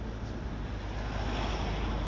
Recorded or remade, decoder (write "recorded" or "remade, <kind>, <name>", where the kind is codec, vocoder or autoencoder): recorded